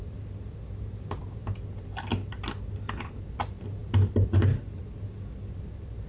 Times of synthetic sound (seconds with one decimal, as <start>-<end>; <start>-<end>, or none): none